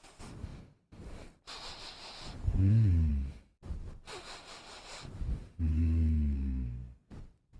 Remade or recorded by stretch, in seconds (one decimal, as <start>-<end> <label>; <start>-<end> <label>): 0.0-2.4 recorded; 2.4-3.1 remade; 3.1-5.7 recorded; 5.7-7.1 remade; 7.1-7.6 recorded